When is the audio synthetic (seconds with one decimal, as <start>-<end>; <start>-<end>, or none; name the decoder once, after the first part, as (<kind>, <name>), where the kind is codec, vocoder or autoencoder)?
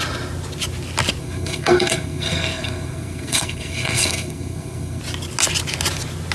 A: 1.2-5.0 (codec, SNAC)